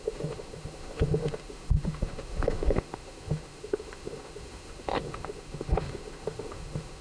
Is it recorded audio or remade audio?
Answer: remade